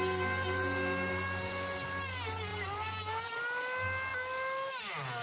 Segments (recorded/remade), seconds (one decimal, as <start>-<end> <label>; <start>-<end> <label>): 0.0-2.5 recorded; 2.5-3.3 remade; 3.3-5.2 recorded